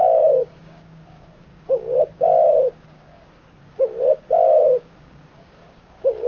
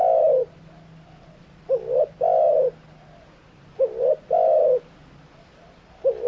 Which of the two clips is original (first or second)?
second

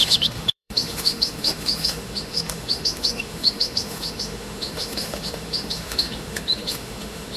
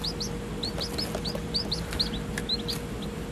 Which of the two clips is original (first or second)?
second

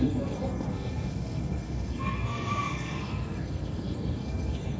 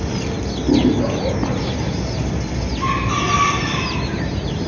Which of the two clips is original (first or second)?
second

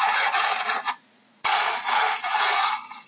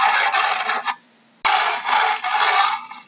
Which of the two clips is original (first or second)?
second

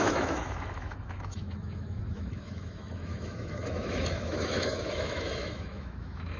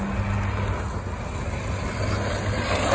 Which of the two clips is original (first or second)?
second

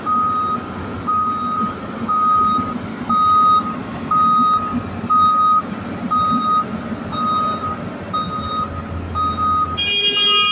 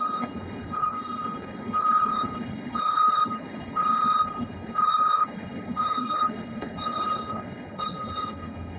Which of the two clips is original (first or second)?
first